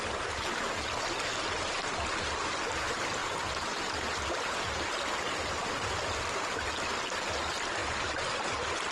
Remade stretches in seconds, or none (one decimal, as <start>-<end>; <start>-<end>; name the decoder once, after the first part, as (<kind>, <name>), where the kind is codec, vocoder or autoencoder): none